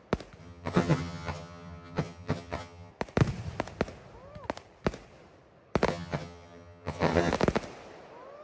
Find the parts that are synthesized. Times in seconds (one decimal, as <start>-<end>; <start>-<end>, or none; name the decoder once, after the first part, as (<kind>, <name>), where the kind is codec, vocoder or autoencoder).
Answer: 0.4-2.9 (vocoder, HiFi-GAN); 5.9-7.3